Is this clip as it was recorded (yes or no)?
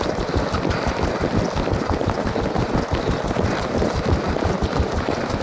yes